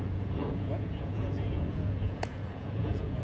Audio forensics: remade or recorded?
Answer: remade